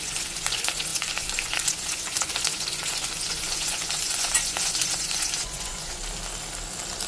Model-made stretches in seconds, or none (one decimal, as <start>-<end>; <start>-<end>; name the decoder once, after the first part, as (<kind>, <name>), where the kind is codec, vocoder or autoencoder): 0.0-6.0 (vocoder, Vocos)